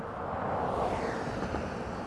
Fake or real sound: real